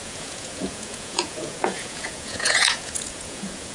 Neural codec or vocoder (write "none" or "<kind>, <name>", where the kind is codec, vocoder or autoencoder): vocoder, Vocos